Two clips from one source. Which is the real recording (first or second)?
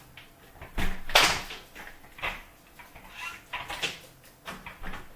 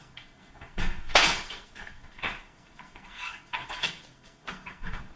first